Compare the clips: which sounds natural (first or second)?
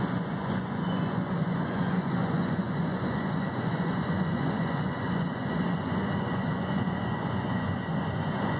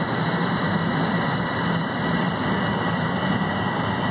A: second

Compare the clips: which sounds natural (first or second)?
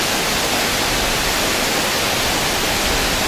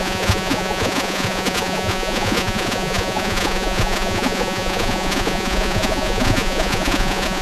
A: first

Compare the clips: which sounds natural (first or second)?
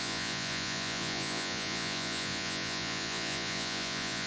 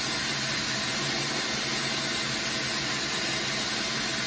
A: second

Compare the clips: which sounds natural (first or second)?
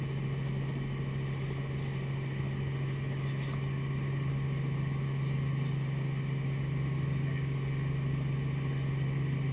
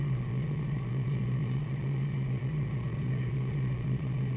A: first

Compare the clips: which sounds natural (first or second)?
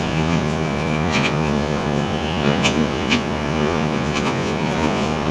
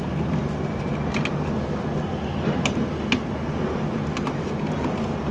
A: second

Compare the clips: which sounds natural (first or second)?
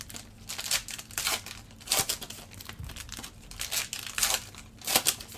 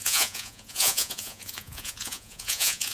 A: first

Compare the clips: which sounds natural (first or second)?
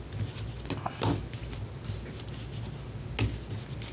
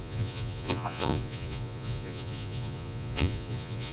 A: first